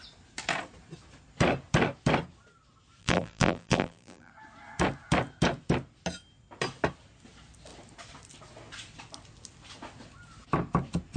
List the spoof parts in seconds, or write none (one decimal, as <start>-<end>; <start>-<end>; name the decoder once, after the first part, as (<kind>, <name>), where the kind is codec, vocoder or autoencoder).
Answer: 3.0-4.3 (vocoder, BigVGAN v2)